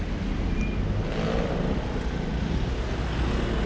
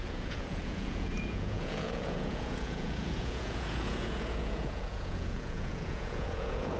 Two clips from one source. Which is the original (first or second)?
first